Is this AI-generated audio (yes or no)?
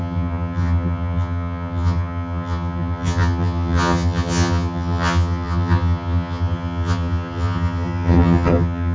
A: yes